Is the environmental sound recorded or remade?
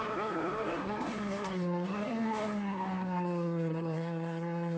remade